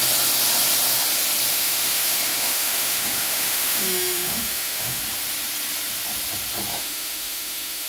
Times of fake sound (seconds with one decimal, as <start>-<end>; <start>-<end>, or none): 1.5-5.0; 6.7-7.9